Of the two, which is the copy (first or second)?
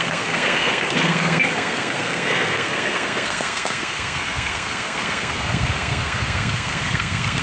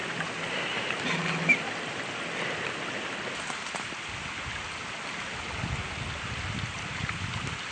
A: first